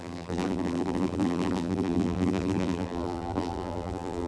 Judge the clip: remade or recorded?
remade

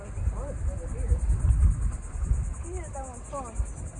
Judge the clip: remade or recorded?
recorded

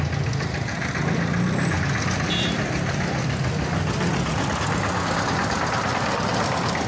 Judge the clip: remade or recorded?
recorded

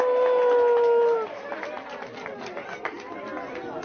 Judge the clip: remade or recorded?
recorded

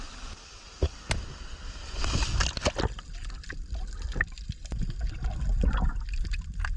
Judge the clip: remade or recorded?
recorded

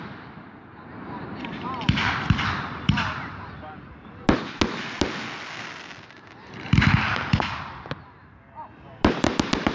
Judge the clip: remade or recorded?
recorded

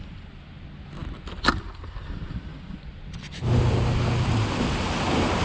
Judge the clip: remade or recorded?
recorded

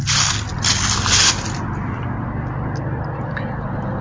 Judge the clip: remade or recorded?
recorded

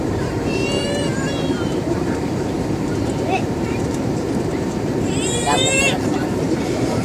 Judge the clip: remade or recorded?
remade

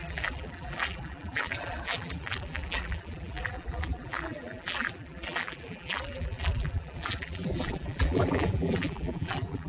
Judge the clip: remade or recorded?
remade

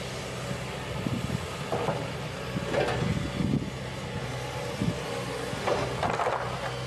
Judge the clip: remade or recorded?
recorded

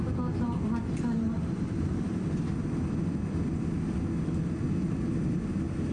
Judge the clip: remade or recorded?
recorded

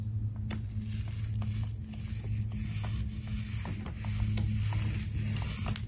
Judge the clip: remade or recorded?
recorded